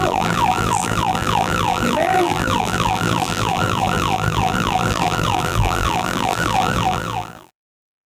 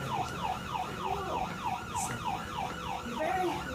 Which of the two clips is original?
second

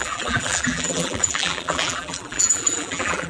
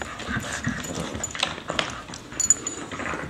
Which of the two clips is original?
second